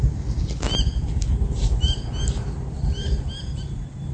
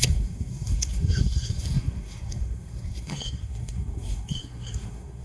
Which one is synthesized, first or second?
second